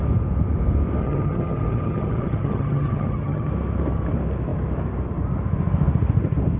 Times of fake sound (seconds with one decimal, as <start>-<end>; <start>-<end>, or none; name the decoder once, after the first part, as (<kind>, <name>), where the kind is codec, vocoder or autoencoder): 1.0-3.5 (vocoder, HiFi-GAN)